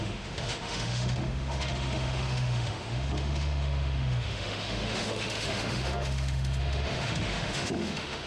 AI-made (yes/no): yes